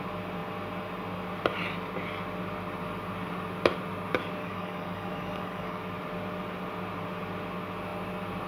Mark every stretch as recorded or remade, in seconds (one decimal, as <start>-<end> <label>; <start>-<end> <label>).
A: 0.0-4.4 recorded; 4.4-5.8 remade; 5.8-8.5 recorded